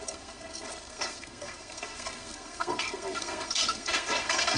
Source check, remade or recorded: remade